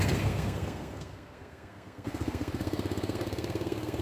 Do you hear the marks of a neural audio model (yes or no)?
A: yes